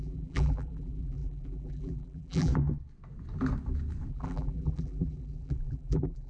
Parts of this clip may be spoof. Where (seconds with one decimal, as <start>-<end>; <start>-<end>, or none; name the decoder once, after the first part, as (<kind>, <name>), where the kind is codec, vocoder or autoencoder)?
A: 0.0-2.5 (vocoder, BigVGAN v2); 4.1-6.3